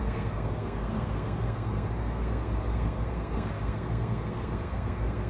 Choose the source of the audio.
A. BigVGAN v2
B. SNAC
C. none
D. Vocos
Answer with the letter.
B